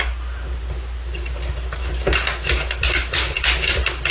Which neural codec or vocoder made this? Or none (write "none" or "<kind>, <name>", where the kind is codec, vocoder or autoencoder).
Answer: none